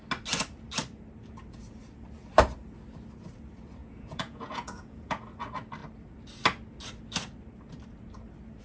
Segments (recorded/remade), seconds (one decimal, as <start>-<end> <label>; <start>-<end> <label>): 0.0-3.8 recorded; 3.8-5.2 remade; 5.2-8.6 recorded